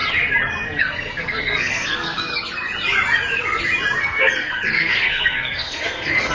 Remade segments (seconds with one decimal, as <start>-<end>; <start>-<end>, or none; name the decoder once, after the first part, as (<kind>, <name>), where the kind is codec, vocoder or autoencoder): 0.8-2.3 (codec, SNAC); 4.0-6.3